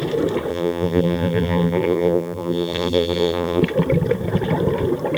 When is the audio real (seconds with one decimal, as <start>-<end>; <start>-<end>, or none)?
0.0-0.5; 3.6-5.2